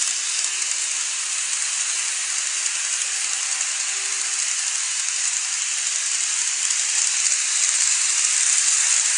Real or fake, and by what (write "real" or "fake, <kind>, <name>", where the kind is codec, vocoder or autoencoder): real